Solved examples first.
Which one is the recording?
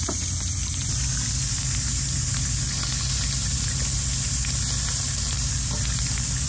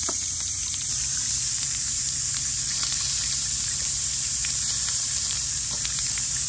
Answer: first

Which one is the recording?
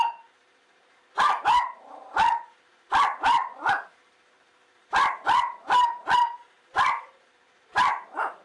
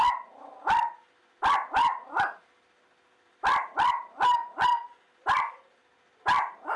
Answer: second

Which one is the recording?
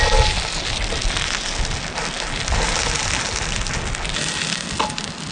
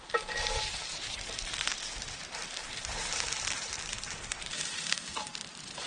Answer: first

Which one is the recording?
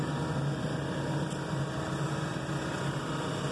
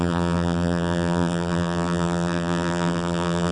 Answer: first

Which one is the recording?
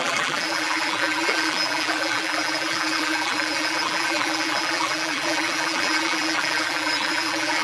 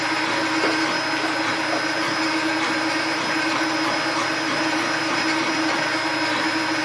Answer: second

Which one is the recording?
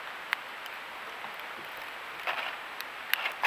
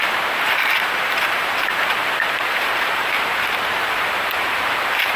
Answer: first